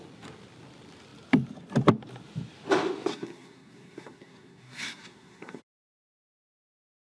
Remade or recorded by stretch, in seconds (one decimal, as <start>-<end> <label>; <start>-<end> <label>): 0.0-3.1 recorded; 3.1-5.6 remade; 5.6-7.0 recorded